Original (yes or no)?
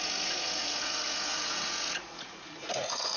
no